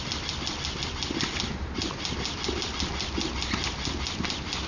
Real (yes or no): yes